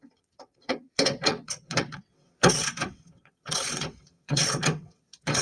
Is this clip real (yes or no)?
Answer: no